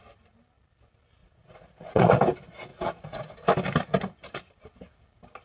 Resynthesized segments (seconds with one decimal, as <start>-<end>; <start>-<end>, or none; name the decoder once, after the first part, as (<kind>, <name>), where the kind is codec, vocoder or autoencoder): 1.2-2.2 (vocoder, Vocos); 2.7-3.2